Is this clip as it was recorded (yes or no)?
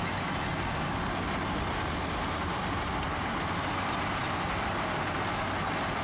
yes